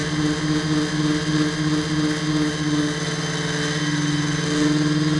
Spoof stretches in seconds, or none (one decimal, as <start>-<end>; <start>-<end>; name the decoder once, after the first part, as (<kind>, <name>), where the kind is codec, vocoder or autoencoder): none